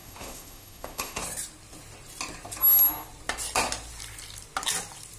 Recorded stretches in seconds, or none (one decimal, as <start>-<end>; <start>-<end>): 1.2-5.2